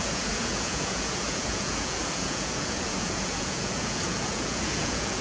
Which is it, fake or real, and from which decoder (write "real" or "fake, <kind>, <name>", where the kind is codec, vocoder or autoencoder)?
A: fake, vocoder, Vocos